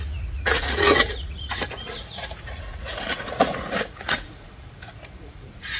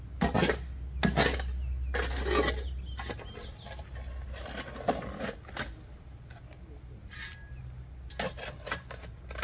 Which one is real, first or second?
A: second